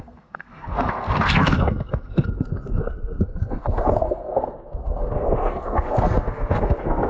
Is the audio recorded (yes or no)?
no